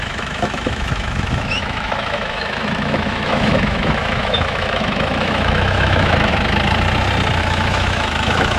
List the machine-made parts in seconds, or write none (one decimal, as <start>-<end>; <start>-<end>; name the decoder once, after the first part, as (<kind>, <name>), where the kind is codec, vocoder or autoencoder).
0.0-6.3 (autoencoder, DAC-VAE); 7.4-8.6